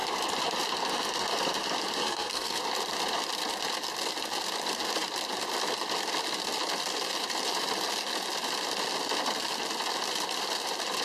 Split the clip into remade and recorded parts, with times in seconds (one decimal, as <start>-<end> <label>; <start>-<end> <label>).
0.0-2.0 recorded; 2.0-2.6 remade; 2.6-11.0 recorded